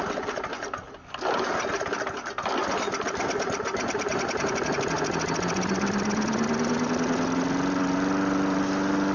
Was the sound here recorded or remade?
recorded